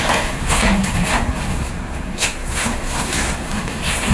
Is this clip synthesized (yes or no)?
yes